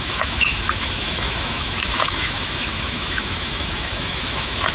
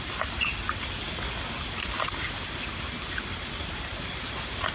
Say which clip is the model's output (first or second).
first